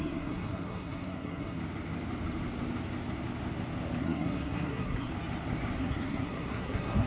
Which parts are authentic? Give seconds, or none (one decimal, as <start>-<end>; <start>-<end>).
1.6-4.0; 5.1-5.8